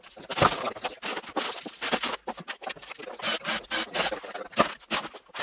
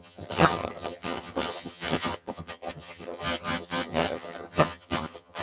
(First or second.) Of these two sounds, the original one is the first